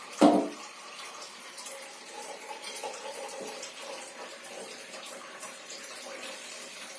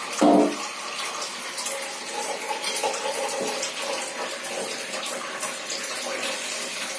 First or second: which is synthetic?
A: first